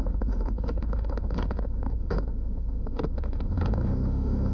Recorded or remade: remade